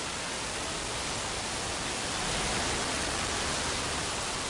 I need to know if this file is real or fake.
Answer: real